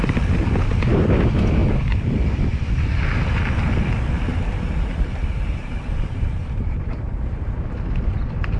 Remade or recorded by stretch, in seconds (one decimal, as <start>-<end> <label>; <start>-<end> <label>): 0.0-4.3 recorded; 4.3-7.6 remade; 7.6-8.6 recorded